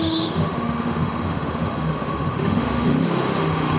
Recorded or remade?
remade